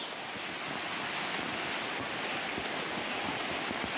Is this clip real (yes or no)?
yes